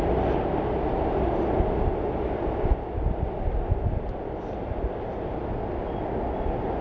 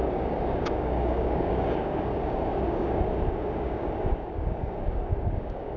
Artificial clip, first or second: second